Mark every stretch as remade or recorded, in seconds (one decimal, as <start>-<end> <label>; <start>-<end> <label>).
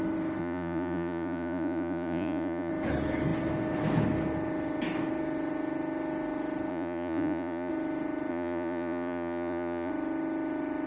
0.0-0.4 recorded; 0.4-2.7 remade; 2.7-6.7 recorded; 6.7-7.7 remade; 7.7-8.3 recorded; 8.3-9.9 remade; 9.9-10.9 recorded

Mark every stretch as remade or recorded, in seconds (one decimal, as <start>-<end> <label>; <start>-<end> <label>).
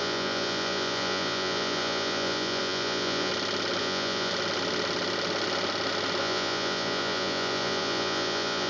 0.0-3.3 remade; 3.3-3.8 recorded; 3.8-4.3 remade; 4.3-6.2 recorded; 6.2-8.7 remade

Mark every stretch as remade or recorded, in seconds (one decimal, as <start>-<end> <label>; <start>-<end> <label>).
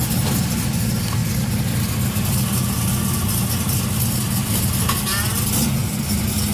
0.0-6.5 recorded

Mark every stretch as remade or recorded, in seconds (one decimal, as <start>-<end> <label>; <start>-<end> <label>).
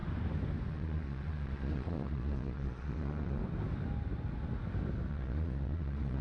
0.0-0.7 recorded; 0.7-3.4 remade; 3.4-5.1 recorded; 5.1-6.2 remade